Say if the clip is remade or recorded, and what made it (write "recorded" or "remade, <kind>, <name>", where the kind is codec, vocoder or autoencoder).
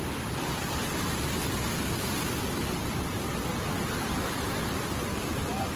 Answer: remade, vocoder, BigVGAN v2